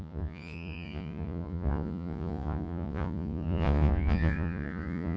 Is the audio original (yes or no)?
no